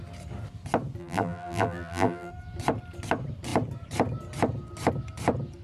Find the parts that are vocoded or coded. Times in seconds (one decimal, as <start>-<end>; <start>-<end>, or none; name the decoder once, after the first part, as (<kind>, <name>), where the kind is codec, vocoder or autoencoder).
1.0-2.3 (vocoder, BigVGAN v2)